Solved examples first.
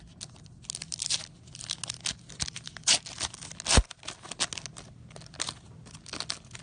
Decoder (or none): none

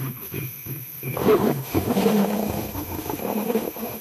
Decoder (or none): autoencoder, DAC-VAE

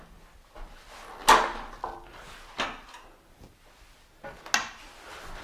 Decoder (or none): none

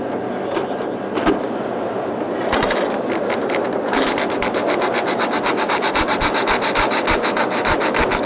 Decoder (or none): none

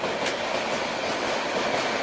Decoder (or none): none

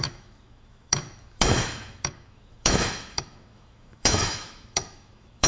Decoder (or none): autoencoder, DAC-VAE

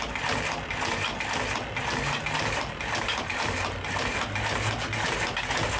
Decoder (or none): none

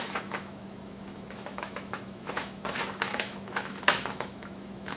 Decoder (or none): autoencoder, DAC-VAE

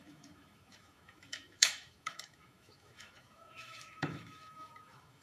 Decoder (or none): autoencoder, DAC-VAE